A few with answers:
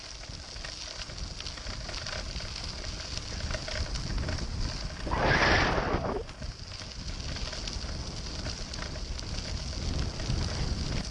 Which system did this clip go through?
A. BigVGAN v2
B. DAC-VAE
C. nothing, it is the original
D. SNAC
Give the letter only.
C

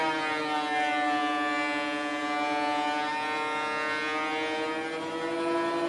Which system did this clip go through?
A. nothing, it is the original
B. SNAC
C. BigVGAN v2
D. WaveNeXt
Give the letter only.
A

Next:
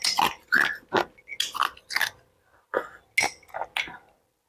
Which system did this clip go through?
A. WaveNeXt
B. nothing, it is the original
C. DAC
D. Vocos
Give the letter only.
B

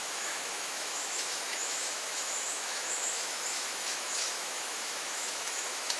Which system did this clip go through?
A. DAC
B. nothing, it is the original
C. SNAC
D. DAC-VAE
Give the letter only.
D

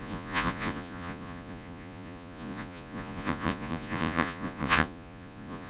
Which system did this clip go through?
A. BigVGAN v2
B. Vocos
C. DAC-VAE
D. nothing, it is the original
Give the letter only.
B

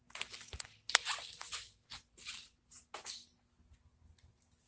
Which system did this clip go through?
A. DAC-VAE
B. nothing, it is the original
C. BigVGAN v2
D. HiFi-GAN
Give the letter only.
B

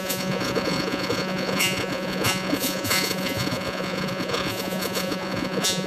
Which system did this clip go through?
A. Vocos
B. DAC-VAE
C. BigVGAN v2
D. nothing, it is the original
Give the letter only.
A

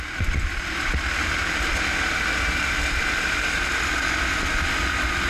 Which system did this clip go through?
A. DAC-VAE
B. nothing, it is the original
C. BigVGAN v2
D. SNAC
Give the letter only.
B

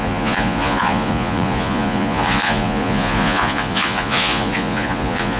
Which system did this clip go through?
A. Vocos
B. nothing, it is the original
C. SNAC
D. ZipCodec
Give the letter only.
A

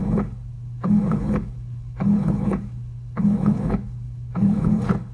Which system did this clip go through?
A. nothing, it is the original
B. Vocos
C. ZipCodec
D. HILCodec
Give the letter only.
D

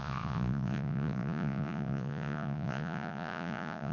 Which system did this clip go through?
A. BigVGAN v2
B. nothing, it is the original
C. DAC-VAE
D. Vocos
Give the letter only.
D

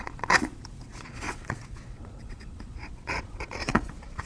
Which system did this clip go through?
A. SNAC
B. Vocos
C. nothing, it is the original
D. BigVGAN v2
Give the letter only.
B